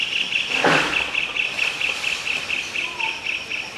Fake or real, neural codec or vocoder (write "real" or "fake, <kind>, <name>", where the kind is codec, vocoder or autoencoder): real